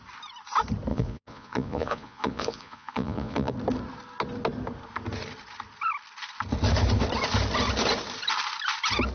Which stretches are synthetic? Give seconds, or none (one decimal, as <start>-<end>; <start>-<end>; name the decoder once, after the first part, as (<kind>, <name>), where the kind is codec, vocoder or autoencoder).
0.9-3.5 (vocoder, Vocos)